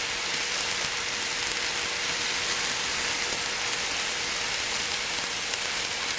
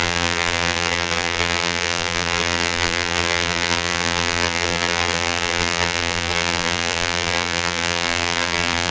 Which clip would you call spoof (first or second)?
second